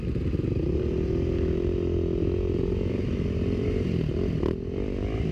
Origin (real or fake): real